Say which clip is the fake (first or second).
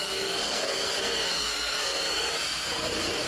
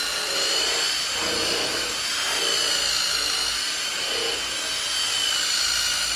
first